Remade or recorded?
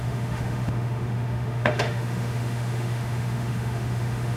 remade